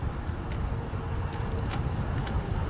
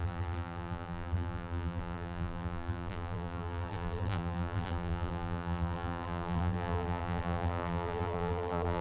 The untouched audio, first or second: first